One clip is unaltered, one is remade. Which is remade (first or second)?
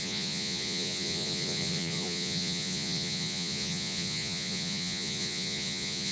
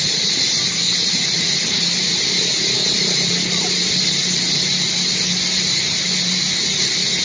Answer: first